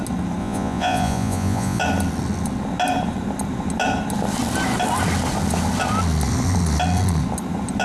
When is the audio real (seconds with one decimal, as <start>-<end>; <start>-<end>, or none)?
0.0-0.4; 1.8-7.8

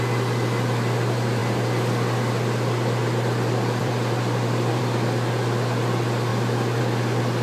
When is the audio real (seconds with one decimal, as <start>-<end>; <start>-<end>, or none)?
0.0-1.4; 4.8-7.4

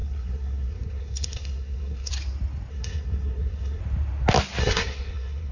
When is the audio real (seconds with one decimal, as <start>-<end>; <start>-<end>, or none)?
2.1-2.7; 3.8-4.6

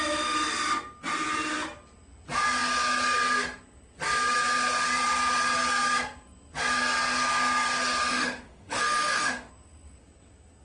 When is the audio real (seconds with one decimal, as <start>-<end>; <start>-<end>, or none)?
0.0-8.1; 9.5-10.6

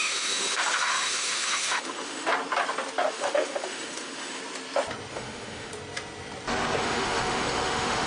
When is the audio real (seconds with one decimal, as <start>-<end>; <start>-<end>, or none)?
2.3-3.1; 4.4-5.1; 5.7-6.8

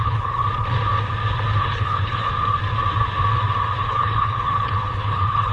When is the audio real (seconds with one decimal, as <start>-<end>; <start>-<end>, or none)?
0.4-1.6; 2.3-3.8

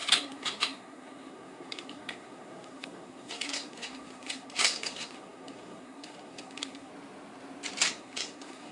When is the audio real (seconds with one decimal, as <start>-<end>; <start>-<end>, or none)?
6.9-7.9

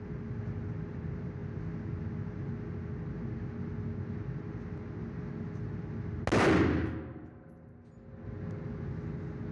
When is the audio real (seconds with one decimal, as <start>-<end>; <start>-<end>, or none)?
0.0-9.5